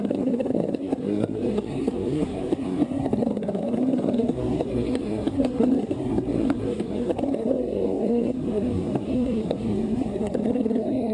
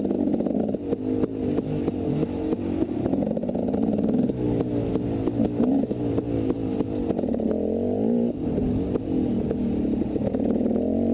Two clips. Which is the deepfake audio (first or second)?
first